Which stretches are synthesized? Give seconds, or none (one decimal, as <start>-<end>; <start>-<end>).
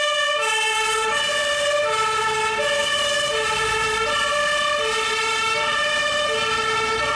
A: 1.4-2.2; 2.8-7.1